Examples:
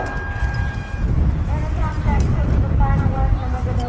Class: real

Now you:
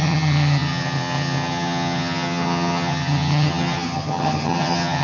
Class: fake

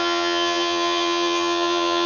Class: fake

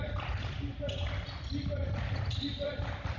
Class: real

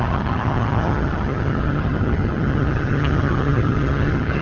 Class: fake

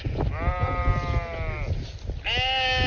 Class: real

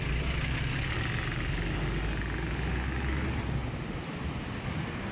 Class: real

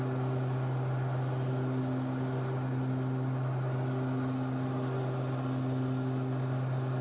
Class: real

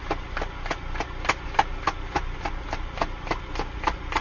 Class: real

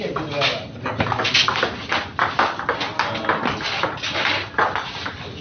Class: real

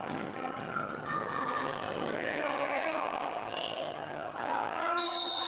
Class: fake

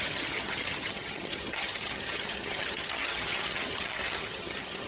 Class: fake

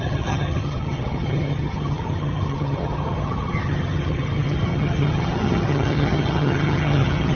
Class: fake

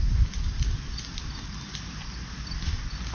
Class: real